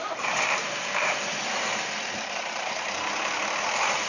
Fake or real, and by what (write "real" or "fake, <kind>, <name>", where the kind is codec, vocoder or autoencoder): fake, vocoder, BigVGAN v2